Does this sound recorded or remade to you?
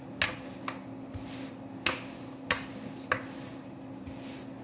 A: recorded